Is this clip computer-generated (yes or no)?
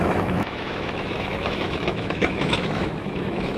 yes